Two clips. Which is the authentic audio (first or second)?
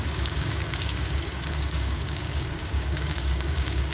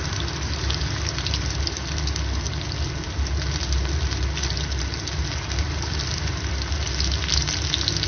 second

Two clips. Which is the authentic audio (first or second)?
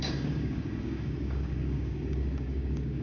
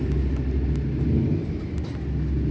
second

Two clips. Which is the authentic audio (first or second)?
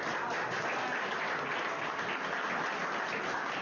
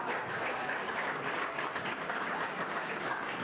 first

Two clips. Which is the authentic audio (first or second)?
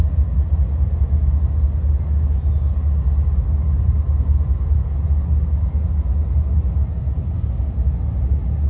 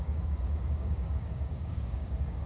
first